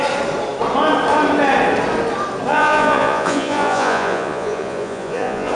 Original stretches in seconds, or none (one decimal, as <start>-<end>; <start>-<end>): 0.0-2.5